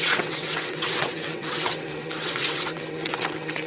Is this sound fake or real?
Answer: fake